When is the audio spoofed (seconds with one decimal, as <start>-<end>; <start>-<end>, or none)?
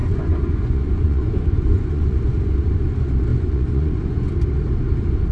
0.0-2.2; 3.3-4.2